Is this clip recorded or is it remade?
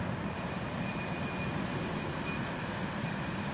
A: recorded